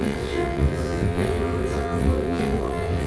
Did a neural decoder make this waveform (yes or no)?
yes